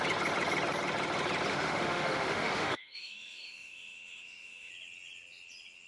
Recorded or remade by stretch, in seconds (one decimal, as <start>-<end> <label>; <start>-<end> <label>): 0.0-1.5 recorded; 1.5-4.7 remade; 4.7-5.9 recorded